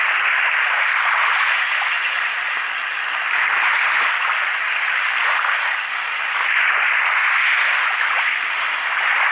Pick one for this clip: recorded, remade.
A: recorded